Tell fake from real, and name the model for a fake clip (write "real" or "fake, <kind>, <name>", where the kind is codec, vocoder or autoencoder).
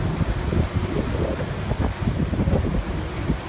real